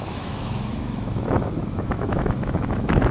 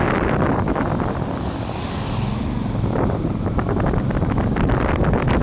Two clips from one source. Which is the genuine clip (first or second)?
second